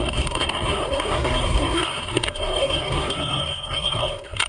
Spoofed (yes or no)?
yes